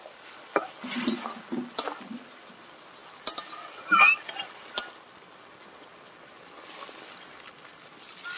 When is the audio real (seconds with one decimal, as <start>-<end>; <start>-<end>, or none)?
0.0-8.4